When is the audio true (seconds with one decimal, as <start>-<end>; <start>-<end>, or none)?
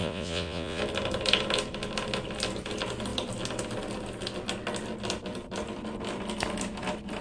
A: 0.8-7.2